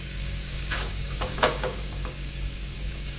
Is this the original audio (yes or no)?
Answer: no